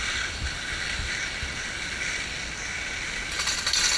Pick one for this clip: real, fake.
real